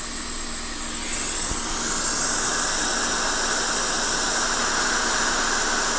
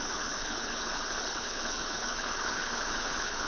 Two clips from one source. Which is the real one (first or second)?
first